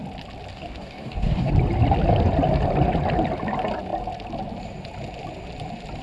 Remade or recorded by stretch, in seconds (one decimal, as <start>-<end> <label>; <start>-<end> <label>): 0.0-0.5 recorded; 0.5-1.5 remade; 1.5-6.0 recorded